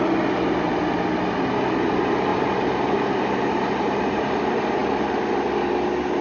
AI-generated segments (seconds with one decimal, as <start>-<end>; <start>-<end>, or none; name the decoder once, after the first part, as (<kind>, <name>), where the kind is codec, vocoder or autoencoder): 2.3-4.2 (vocoder, BigVGAN v2)